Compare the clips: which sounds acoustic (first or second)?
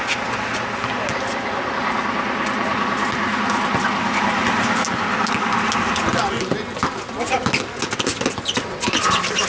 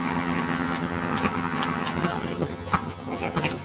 first